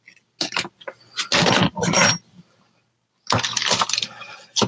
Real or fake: real